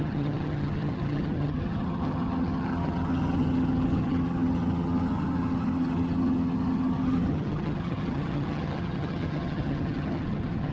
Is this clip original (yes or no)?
no